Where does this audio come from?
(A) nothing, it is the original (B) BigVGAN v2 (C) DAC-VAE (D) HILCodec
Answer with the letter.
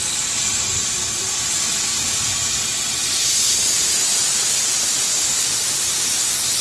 A